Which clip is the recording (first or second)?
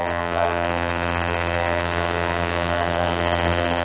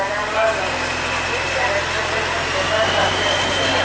second